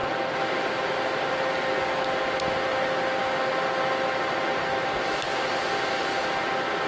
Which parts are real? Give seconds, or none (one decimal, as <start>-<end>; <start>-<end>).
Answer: 0.0-6.9